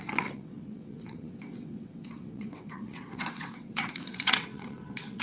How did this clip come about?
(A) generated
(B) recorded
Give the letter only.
A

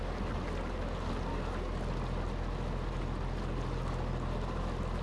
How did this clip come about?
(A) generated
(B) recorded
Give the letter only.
B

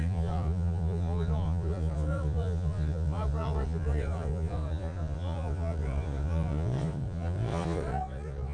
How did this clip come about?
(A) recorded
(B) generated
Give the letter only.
B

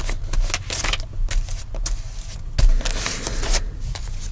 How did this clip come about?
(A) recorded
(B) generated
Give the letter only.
A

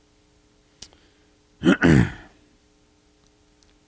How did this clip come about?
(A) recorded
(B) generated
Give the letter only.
A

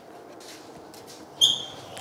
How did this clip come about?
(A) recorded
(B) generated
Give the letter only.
A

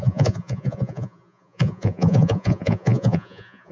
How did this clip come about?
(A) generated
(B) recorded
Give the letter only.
A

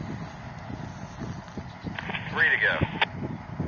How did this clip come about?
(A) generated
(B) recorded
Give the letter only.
B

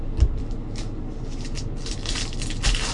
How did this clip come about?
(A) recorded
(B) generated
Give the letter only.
A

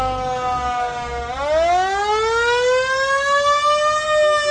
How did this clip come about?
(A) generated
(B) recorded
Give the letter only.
B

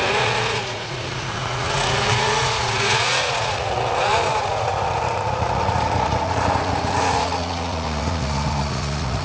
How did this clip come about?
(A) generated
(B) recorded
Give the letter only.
A